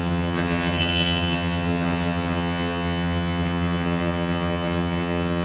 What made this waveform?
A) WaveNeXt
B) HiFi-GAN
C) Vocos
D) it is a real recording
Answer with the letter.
B